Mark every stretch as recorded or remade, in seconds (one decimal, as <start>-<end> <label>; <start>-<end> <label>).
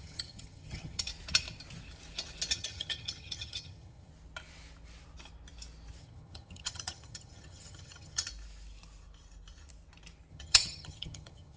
0.0-1.1 remade; 1.1-2.5 recorded; 2.5-4.1 remade; 4.1-6.0 recorded; 6.0-8.3 remade; 8.3-10.3 recorded; 10.3-11.6 remade